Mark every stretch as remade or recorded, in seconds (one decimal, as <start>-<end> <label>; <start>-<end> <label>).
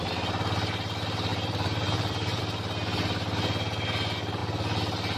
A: 0.0-1.3 recorded; 1.3-2.4 remade; 2.4-5.2 recorded